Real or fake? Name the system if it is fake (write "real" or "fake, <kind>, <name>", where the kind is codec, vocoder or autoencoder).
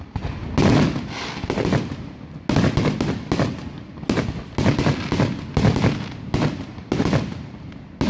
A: real